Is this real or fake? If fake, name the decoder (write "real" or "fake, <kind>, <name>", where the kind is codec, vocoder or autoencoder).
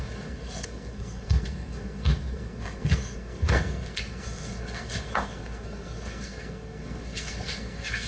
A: fake, codec, SNAC